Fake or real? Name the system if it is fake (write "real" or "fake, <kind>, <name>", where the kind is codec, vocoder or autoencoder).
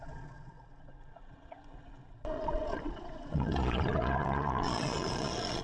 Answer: fake, vocoder, Vocos